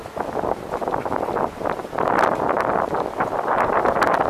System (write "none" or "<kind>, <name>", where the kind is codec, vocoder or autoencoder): none